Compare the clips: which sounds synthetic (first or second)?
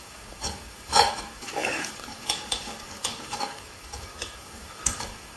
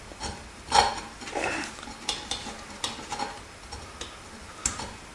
first